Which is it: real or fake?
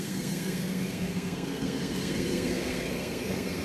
fake